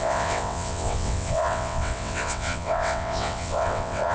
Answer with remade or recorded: remade